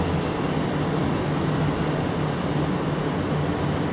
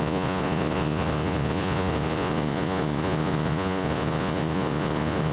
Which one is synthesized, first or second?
second